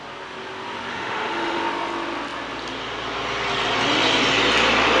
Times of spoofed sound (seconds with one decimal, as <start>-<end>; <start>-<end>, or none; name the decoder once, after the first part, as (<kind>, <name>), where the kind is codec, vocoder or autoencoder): 0.9-1.6 (autoencoder, DAC-VAE)